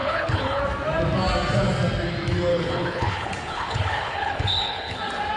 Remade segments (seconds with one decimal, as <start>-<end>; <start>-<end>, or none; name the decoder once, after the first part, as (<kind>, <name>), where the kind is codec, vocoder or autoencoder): 0.0-0.6 (codec, HILCodec); 2.5-5.0